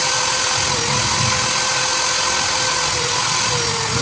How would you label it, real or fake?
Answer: real